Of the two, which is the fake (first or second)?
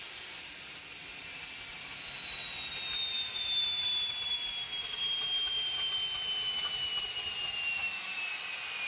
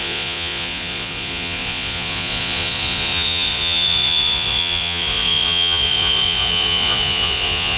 second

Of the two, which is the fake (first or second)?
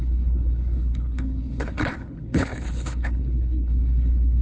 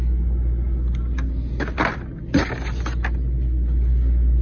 first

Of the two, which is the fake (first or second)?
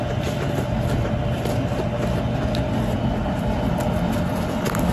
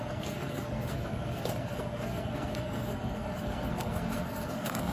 second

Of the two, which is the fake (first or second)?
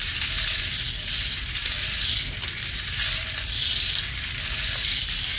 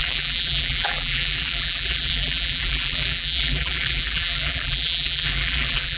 second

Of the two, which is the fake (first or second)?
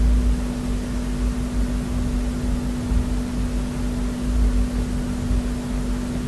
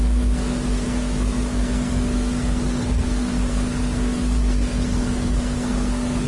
second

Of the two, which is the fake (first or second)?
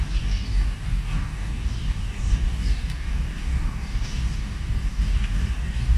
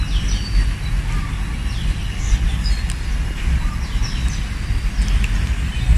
first